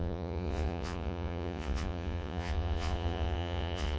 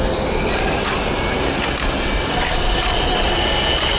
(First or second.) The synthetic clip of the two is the first